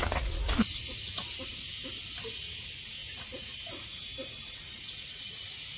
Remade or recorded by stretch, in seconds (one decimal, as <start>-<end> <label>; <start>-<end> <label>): 0.0-1.5 remade; 1.5-2.3 recorded; 2.3-5.8 remade